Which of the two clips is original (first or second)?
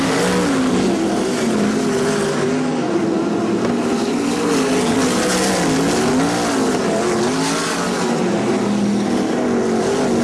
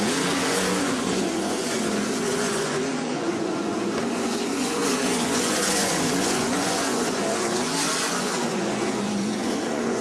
first